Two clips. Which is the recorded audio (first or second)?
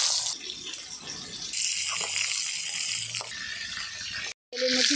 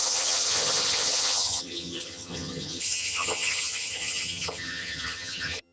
first